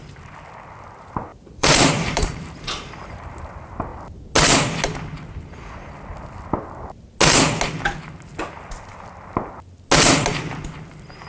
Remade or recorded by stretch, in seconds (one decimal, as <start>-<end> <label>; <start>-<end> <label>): 0.0-1.3 recorded; 1.3-3.5 remade; 3.5-11.3 recorded